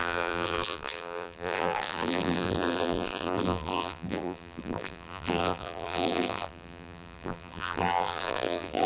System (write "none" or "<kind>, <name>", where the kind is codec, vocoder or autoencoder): vocoder, BigVGAN v2